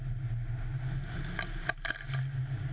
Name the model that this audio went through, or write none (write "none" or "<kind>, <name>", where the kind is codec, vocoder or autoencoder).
none